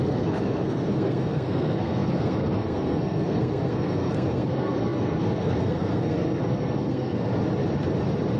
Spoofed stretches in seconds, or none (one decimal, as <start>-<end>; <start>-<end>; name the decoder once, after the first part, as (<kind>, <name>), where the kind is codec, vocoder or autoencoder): 0.0-7.4 (codec, SNAC)